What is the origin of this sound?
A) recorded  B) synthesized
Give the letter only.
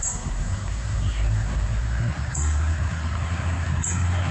B